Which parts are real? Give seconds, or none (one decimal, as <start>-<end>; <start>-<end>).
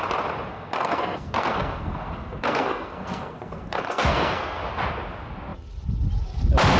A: 0.0-0.5; 4.6-6.8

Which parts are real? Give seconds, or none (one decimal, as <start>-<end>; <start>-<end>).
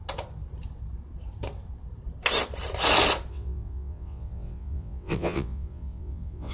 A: 0.0-3.3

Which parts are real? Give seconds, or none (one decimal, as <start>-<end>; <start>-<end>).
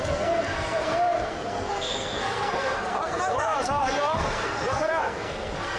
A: none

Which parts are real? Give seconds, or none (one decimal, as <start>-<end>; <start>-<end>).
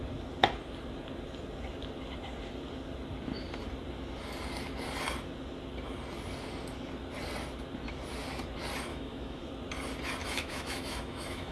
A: 0.0-8.9; 9.4-10.2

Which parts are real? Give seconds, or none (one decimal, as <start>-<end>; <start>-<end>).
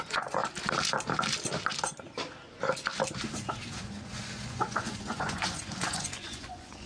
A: 0.4-3.8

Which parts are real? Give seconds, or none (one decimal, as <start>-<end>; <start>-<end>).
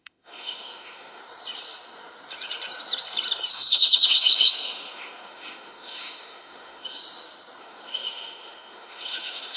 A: 1.2-3.5; 7.0-7.6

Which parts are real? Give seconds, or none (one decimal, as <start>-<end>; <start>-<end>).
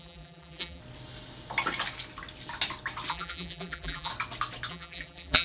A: 0.8-3.1; 4.1-4.7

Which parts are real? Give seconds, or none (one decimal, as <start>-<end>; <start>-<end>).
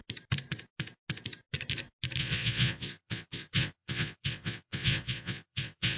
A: 0.0-2.2